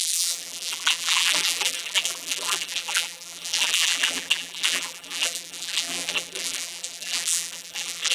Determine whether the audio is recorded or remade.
remade